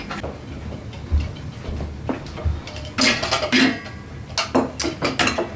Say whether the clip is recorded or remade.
recorded